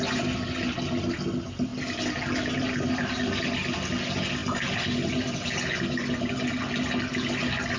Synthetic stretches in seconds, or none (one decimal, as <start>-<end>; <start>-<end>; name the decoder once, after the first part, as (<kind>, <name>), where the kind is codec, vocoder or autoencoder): none